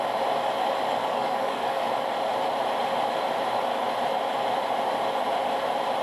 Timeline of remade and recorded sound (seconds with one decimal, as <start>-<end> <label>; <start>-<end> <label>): 0.0-1.0 recorded; 1.0-1.8 remade; 1.8-6.0 recorded